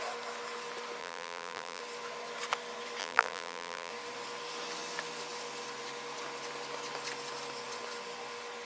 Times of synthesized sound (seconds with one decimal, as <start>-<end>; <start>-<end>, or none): 1.0-1.8; 3.0-3.9